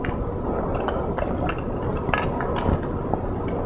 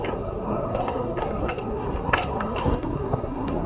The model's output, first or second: second